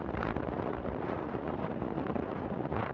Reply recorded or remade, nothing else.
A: remade